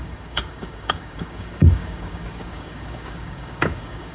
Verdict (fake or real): fake